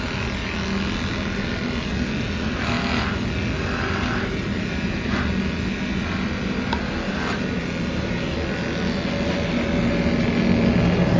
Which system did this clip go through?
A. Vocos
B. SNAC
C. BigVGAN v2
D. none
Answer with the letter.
D